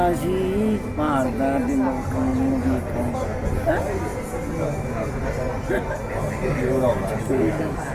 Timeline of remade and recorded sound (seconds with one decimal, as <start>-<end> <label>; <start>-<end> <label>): 0.0-7.9 recorded